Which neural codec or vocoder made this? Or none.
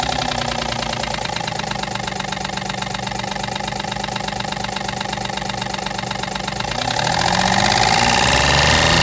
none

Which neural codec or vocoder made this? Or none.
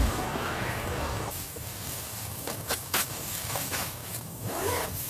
codec, DAC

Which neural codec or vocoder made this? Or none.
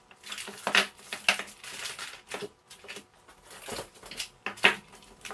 none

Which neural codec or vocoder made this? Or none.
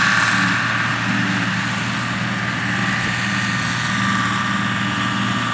none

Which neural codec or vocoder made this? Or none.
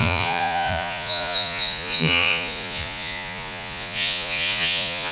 vocoder, Vocos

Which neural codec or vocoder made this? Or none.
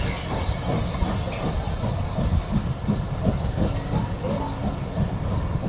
none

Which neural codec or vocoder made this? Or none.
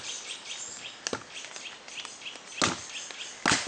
none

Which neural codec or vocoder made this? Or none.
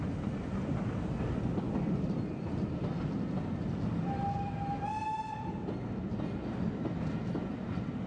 none